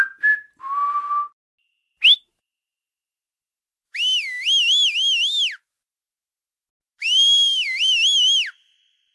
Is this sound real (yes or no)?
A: yes